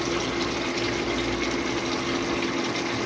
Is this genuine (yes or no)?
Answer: yes